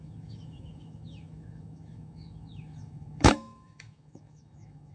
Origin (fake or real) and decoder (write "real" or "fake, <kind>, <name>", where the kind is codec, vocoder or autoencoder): fake, autoencoder, DAC-VAE